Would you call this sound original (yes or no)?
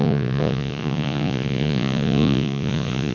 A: no